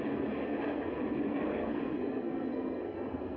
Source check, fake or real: fake